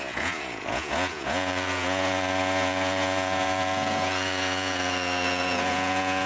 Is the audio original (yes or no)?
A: no